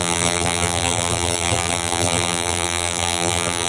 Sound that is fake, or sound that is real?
fake